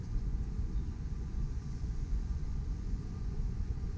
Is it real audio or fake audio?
fake